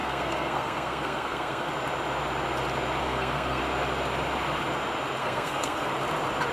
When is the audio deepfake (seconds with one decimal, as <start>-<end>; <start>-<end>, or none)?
0.0-1.7; 3.0-3.6; 5.2-5.9